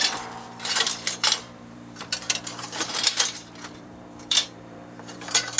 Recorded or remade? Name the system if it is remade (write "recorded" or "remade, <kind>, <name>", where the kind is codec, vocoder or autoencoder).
remade, vocoder, BigVGAN v2